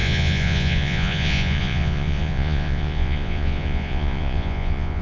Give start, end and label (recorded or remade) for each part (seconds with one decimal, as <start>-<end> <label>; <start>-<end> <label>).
0.0-5.0 remade